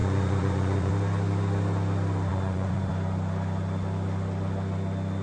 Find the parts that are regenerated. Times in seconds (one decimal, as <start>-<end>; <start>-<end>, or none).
0.0-0.9; 2.3-2.9